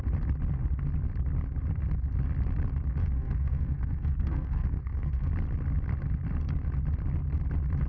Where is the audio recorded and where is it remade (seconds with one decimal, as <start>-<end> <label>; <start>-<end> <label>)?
0.0-3.0 recorded; 3.0-5.3 remade; 5.3-7.9 recorded